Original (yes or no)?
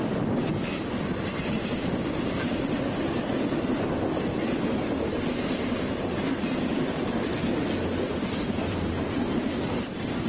yes